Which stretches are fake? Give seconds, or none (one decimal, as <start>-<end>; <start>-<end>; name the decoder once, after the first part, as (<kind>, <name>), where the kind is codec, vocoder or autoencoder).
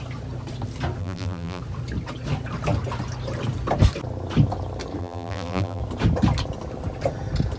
1.0-1.6 (vocoder, BigVGAN v2); 5.0-5.8